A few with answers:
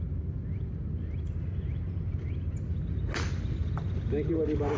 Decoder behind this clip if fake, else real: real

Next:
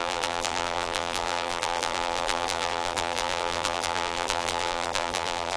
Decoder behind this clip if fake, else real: fake, vocoder, BigVGAN v2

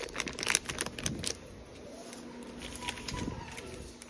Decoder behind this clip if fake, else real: real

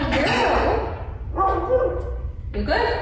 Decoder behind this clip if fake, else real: real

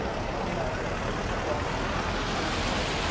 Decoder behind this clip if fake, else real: real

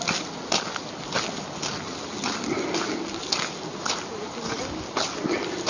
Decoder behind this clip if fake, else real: real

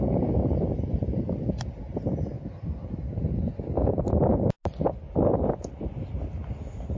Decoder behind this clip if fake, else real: real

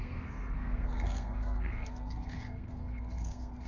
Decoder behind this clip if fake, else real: fake, codec, SNAC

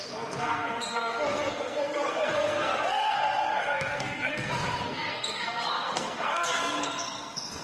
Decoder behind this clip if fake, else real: fake, codec, SNAC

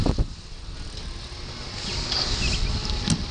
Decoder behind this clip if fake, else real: real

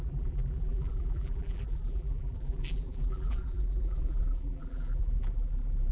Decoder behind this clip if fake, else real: fake, vocoder, BigVGAN v2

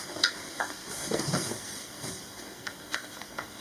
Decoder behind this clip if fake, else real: fake, codec, SNAC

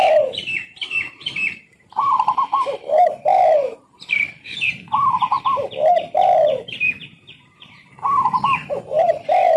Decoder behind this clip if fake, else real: fake, vocoder, BigVGAN v2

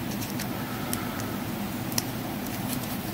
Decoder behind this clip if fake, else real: real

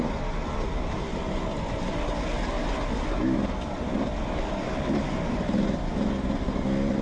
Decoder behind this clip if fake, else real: real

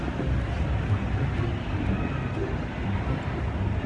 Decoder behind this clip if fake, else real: real